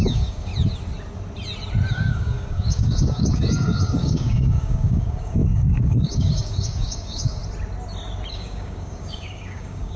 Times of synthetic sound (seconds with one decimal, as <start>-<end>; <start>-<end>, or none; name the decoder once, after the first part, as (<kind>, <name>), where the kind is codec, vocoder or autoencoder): 0.0-0.5 (codec, DAC); 1.9-7.4; 8.3-10.0